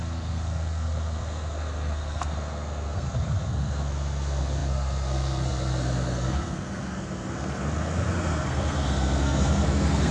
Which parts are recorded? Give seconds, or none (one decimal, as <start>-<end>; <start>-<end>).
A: none